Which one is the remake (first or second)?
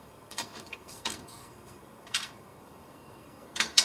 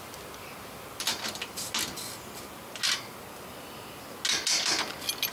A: first